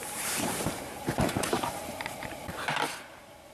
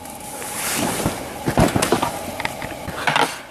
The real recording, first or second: second